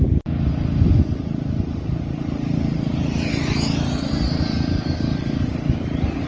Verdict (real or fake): real